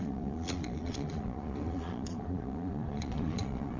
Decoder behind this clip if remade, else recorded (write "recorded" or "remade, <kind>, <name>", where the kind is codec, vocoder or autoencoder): remade, vocoder, Vocos